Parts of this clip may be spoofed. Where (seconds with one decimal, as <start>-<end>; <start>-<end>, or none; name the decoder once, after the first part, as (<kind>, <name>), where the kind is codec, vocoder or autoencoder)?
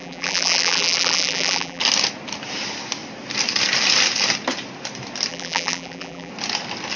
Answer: 0.0-1.8 (vocoder, BigVGAN v2); 5.3-6.3